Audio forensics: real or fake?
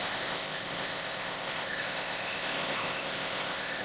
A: fake